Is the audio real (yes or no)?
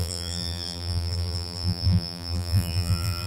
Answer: no